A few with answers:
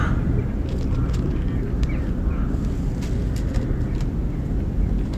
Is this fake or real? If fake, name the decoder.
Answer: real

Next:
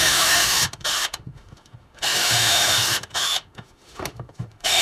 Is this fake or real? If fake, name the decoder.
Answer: fake, autoencoder, DAC-VAE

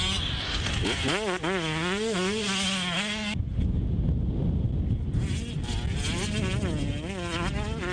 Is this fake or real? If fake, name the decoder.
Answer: real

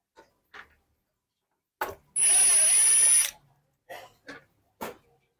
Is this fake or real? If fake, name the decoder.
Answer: real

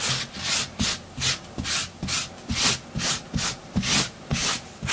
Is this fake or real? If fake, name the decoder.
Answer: real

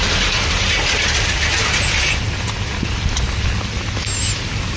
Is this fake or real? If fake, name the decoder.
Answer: real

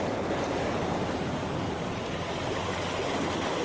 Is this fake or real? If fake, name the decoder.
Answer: real